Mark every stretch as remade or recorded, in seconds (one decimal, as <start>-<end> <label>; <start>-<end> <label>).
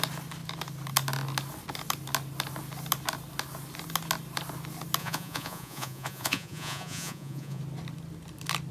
0.0-5.0 recorded; 5.0-7.6 remade; 7.6-8.7 recorded